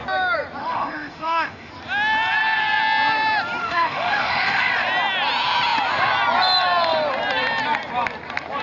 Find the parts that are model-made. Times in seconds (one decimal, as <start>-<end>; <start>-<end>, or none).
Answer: 0.6-1.7; 3.6-4.7